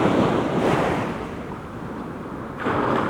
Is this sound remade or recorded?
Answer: remade